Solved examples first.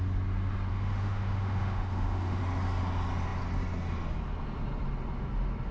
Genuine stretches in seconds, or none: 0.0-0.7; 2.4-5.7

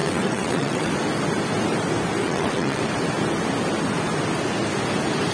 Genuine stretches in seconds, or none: 0.9-2.2; 2.8-5.3

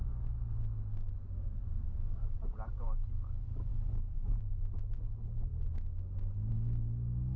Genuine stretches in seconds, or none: 0.0-7.4

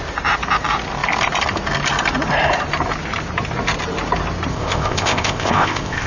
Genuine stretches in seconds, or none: 0.0-4.5

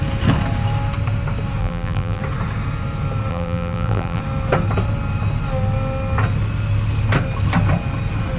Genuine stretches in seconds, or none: 0.0-1.6; 2.2-3.3; 4.2-8.4